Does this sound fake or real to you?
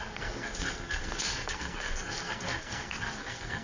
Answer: fake